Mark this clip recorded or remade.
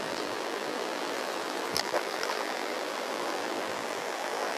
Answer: remade